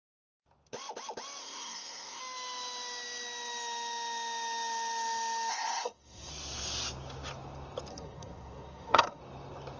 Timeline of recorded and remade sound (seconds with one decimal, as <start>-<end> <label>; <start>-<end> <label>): 0.0-1.4 recorded; 1.4-2.2 remade; 2.2-5.5 recorded; 5.5-6.3 remade; 6.3-7.9 recorded; 7.9-9.2 remade; 9.2-9.8 recorded